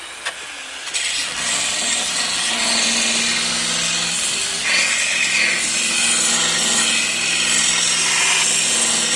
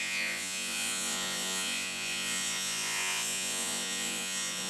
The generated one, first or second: second